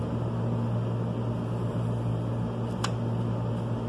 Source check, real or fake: real